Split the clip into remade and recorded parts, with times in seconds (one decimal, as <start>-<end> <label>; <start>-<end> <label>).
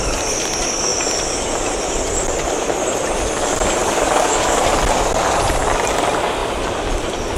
0.0-3.8 recorded; 3.8-4.6 remade; 4.6-7.4 recorded